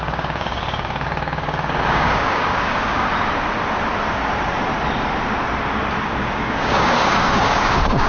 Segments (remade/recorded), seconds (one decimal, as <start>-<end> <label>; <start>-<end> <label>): 0.0-3.1 remade; 3.1-6.0 recorded; 6.0-8.1 remade